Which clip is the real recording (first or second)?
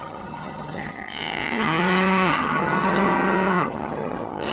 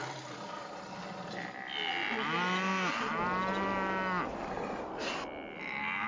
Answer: second